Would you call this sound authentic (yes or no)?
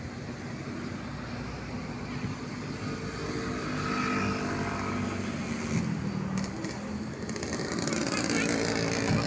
yes